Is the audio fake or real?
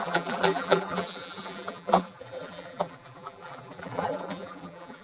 fake